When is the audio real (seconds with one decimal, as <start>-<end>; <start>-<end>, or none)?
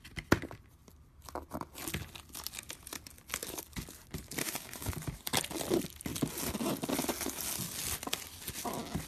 0.0-4.4; 4.9-9.1